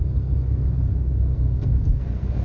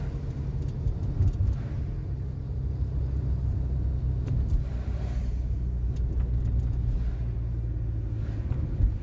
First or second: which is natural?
second